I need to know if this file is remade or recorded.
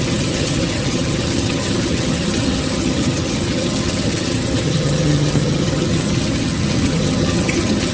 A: remade